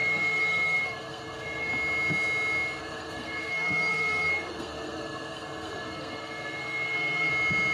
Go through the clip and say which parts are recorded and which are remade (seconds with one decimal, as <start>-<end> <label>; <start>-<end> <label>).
0.0-1.7 remade; 1.7-2.8 recorded; 2.8-7.3 remade; 7.3-7.7 recorded